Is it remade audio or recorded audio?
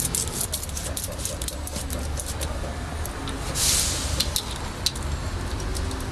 recorded